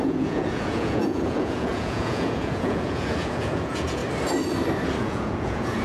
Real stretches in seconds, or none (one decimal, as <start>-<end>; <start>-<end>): 4.0-5.0